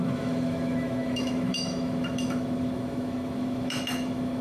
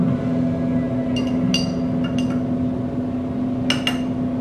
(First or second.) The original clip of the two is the second